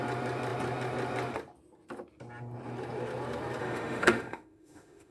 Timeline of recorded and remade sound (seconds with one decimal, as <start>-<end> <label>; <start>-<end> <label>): 0.0-3.6 recorded; 3.6-5.1 remade